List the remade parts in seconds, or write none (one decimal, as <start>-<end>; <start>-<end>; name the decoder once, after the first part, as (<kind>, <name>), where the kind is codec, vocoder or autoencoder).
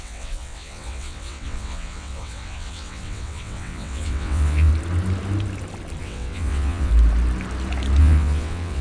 0.0-4.7 (vocoder, WaveNeXt); 6.0-6.9; 8.0-8.8